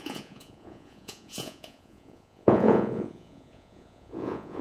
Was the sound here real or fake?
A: fake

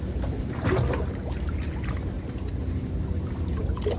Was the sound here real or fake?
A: real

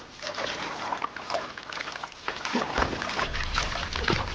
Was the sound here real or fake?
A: real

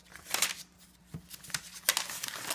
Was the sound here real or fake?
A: real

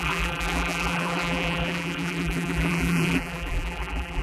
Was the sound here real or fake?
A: fake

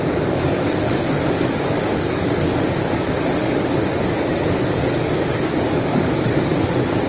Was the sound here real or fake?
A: fake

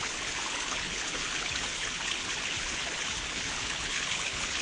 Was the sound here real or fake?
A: fake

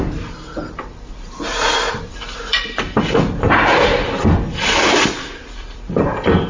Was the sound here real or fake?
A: fake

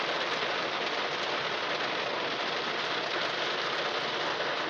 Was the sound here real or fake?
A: real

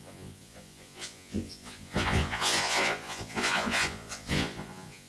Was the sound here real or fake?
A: fake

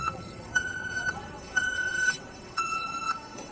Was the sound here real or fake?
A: fake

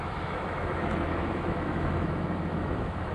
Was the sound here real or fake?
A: fake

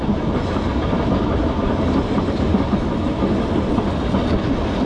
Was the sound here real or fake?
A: real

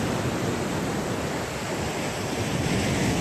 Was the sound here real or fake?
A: fake